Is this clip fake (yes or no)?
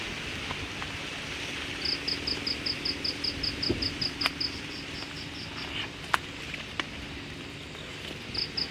no